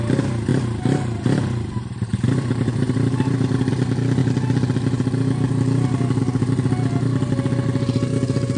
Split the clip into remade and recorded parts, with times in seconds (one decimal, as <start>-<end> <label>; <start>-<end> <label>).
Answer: 0.0-0.5 recorded; 0.5-3.7 remade; 3.7-8.6 recorded

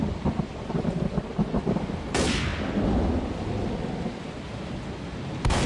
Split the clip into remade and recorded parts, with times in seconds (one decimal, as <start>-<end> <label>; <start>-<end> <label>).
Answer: 0.0-5.7 recorded